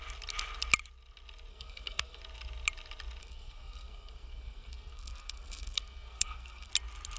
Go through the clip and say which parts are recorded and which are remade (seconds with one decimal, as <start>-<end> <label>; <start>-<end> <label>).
0.0-1.5 recorded; 1.5-2.2 remade; 2.2-3.2 recorded; 3.2-6.7 remade; 6.7-7.2 recorded